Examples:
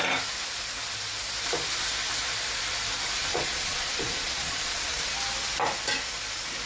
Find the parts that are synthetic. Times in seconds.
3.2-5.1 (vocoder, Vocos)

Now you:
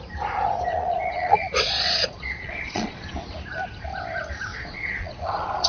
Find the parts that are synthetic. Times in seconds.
0.7-3.1 (vocoder, Vocos); 4.5-5.7